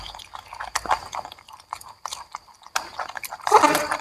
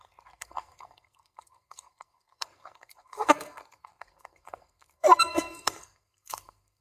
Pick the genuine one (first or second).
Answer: first